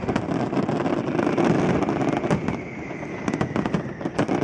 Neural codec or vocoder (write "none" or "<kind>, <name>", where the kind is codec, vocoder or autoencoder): none